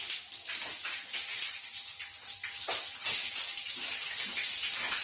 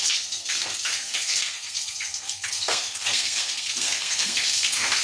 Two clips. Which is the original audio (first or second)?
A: first